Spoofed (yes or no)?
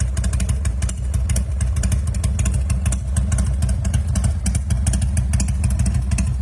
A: no